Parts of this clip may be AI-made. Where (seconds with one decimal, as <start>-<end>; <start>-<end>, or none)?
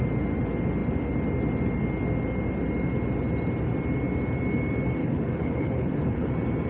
5.0-6.3